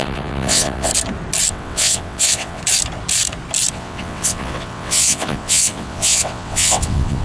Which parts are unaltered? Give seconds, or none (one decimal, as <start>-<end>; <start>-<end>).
0.9-1.5; 2.6-3.7